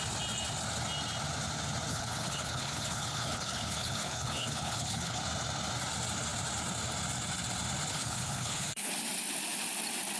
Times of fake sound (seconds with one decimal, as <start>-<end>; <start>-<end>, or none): 1.9-5.2; 7.9-8.9